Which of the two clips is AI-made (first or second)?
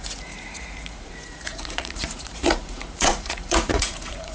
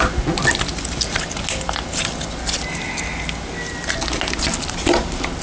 first